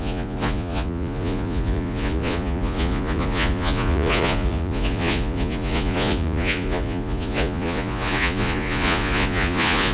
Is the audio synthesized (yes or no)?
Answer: yes